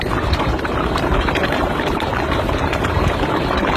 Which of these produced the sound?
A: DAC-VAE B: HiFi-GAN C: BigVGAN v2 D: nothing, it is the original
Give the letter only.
C